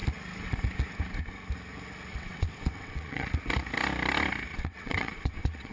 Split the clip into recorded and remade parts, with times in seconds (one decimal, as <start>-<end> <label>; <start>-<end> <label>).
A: 0.0-2.1 recorded; 2.1-3.3 remade; 3.3-4.5 recorded; 4.5-5.7 remade